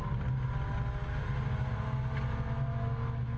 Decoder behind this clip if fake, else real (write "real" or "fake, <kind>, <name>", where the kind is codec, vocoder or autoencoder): real